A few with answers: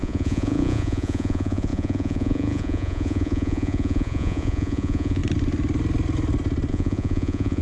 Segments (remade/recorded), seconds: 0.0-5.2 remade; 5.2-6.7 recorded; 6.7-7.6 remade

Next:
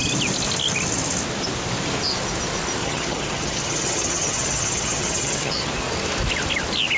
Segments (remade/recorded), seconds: 0.0-2.8 recorded; 2.8-5.7 remade; 5.7-7.0 recorded

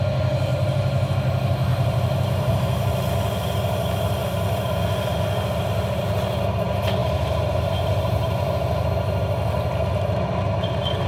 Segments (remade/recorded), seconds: 0.0-0.5 recorded; 0.5-1.1 remade; 1.1-1.7 recorded; 1.7-2.5 remade; 2.5-7.0 recorded; 7.0-8.5 remade; 8.5-11.1 recorded

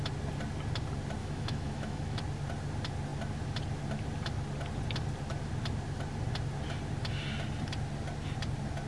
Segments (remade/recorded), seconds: 0.0-1.2 recorded; 1.2-2.2 remade; 2.2-8.9 recorded

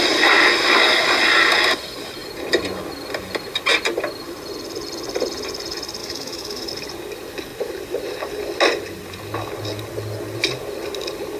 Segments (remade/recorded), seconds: 0.0-6.0 recorded; 6.0-6.7 remade; 6.7-11.4 recorded

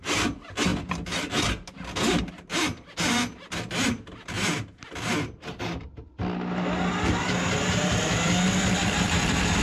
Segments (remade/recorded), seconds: 0.0-9.6 recorded